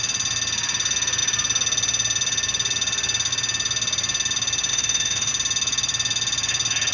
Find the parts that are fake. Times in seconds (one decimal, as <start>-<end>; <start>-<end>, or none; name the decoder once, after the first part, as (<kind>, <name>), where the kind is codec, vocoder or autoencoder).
4.7-5.3 (autoencoder, DAC-VAE)